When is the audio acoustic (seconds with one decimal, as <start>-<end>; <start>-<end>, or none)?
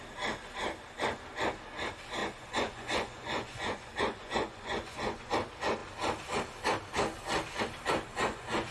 0.0-2.2; 5.3-8.1